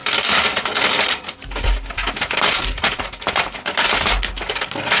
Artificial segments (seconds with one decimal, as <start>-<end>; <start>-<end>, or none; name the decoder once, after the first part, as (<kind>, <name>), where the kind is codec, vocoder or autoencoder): none